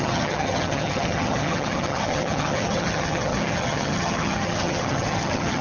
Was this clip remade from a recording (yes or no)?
yes